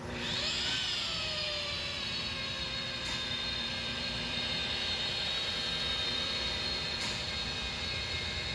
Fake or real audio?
fake